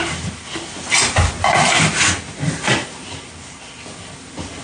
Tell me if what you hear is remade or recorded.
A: recorded